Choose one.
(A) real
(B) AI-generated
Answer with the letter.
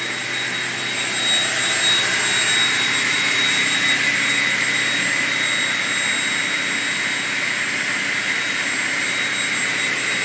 A